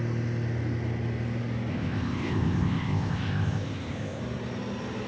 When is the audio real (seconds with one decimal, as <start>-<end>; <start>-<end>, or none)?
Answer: 0.0-1.7; 4.2-5.1